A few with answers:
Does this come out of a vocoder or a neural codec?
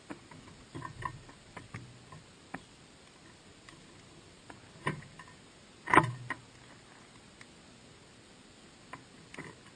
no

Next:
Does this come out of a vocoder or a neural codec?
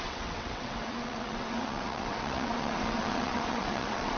yes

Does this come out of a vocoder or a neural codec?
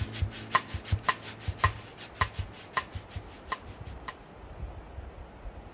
no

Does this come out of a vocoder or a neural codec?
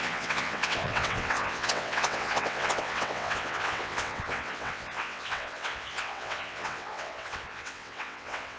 yes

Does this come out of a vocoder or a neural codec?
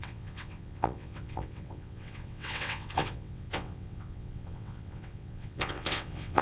yes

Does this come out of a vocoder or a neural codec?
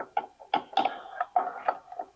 no